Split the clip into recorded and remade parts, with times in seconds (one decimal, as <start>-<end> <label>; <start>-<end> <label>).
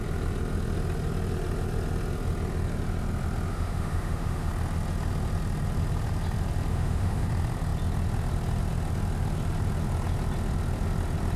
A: 0.0-3.5 recorded; 3.5-4.5 remade; 4.5-6.7 recorded; 6.7-7.3 remade; 7.3-11.4 recorded